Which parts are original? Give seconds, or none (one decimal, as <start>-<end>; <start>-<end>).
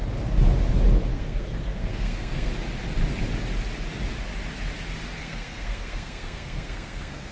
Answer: 0.0-1.1; 2.5-5.2